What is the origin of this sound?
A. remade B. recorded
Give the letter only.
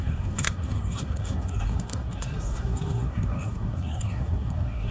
A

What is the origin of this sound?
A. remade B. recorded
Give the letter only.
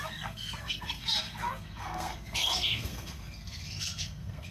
A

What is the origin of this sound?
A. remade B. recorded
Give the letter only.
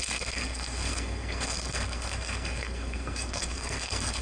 A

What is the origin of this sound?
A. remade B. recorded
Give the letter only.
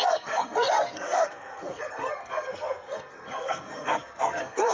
A